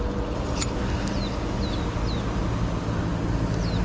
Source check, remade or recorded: recorded